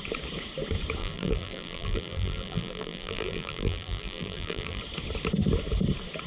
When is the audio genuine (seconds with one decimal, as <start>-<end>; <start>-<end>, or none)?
0.0-1.0; 4.8-6.3